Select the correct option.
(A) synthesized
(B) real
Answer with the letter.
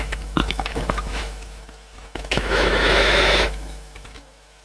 A